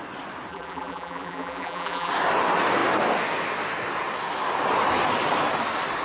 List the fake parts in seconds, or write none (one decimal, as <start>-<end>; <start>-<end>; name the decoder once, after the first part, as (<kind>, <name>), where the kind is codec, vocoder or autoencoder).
0.5-2.1 (vocoder, BigVGAN v2)